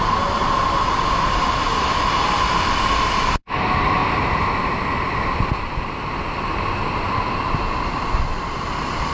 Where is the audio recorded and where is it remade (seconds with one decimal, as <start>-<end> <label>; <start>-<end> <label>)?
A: 0.0-9.1 recorded